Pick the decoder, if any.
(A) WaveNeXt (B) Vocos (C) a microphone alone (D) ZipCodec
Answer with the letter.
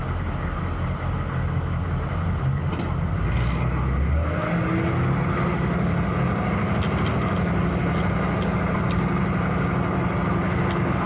C